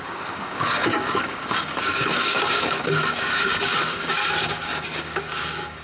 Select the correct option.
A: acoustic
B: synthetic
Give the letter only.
B